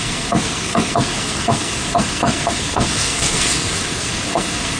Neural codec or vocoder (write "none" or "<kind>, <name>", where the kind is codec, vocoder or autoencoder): codec, SNAC